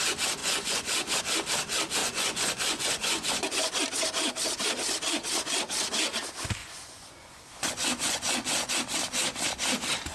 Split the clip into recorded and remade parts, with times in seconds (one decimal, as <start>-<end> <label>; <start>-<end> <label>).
0.0-0.4 recorded; 0.4-1.2 remade; 1.2-2.0 recorded; 2.0-3.8 remade; 3.8-6.6 recorded; 6.6-8.7 remade; 8.7-10.1 recorded